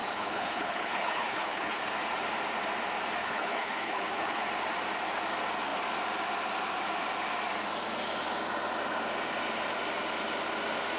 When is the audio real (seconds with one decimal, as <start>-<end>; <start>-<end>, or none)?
1.9-3.2; 4.5-11.0

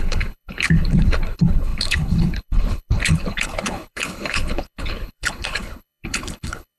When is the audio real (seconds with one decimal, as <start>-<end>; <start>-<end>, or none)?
none

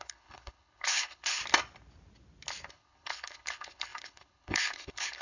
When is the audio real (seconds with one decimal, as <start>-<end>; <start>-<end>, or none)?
1.4-2.7